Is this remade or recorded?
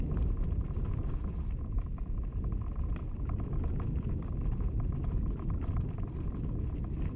recorded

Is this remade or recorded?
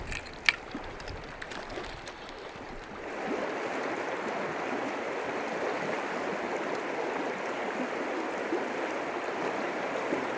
recorded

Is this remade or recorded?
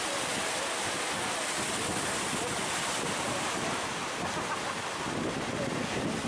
recorded